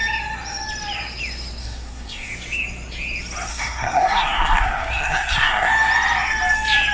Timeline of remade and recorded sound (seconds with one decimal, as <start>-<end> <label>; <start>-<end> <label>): 0.0-1.6 recorded; 1.6-2.3 remade; 2.3-3.5 recorded; 3.5-5.7 remade; 5.7-6.9 recorded